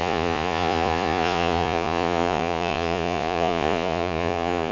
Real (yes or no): no